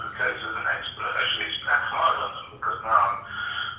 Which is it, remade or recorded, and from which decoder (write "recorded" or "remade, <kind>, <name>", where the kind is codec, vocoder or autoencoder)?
recorded